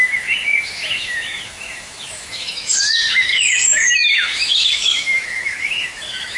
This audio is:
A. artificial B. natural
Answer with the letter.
A